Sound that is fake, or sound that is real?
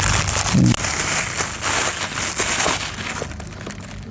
real